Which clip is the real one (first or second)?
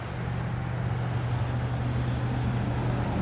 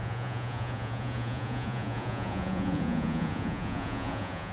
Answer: first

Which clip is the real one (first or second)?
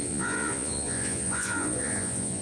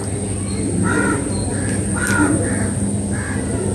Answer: second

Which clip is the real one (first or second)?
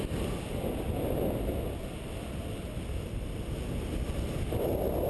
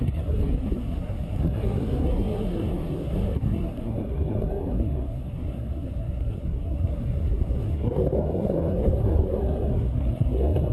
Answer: first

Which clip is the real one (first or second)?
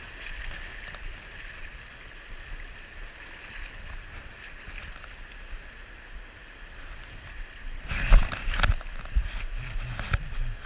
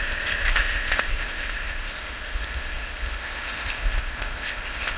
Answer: first